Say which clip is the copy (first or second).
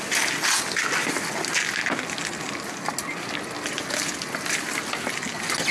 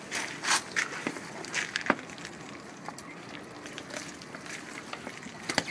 second